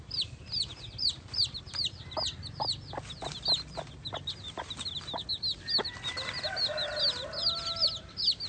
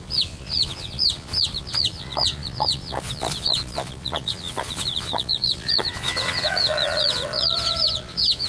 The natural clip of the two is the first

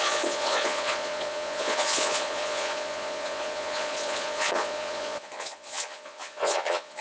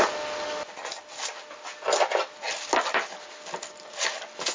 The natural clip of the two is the second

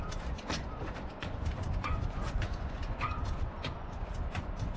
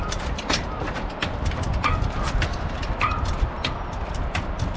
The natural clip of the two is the second